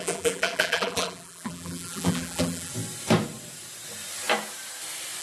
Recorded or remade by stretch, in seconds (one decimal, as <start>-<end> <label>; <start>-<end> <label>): 0.0-2.7 remade; 2.7-5.2 recorded